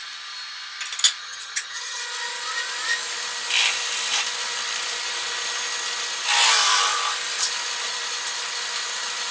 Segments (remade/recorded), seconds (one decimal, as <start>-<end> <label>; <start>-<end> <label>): 0.0-1.2 recorded; 1.2-2.0 remade; 2.0-9.3 recorded